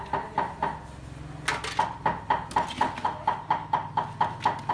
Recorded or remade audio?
recorded